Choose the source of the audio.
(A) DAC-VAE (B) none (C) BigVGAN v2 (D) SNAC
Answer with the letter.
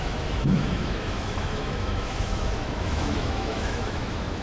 A